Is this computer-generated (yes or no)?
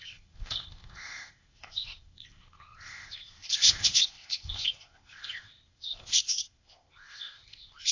yes